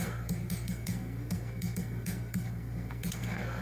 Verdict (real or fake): fake